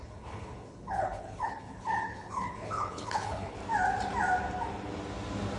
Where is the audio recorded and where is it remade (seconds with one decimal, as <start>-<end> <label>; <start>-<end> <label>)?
0.0-3.6 remade; 3.6-5.6 recorded